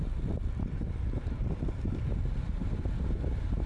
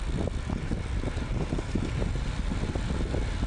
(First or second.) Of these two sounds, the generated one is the first